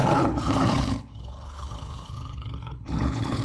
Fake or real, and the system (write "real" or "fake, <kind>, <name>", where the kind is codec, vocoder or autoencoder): fake, codec, HILCodec